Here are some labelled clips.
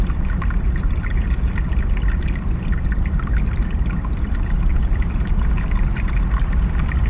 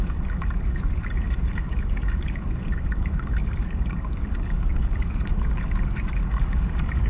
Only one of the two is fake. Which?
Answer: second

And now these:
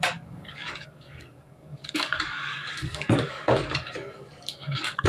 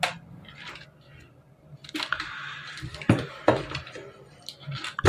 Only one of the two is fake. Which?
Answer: first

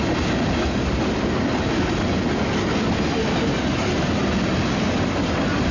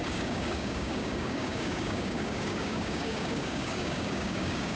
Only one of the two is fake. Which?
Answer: second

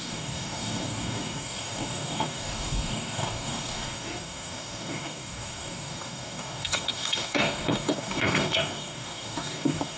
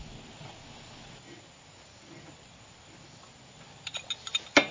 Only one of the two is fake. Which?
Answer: first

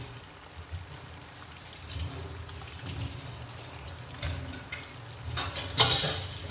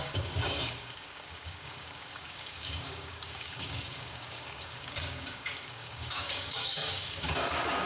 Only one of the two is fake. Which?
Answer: second